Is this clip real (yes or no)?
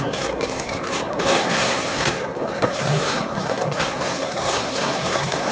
no